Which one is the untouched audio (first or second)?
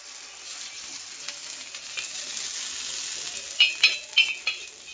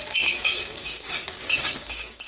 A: first